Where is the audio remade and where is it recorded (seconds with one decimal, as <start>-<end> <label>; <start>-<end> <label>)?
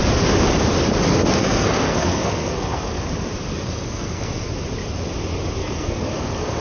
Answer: 0.0-1.4 recorded; 1.4-3.0 remade; 3.0-3.5 recorded; 3.5-4.5 remade; 4.5-5.6 recorded; 5.6-6.6 remade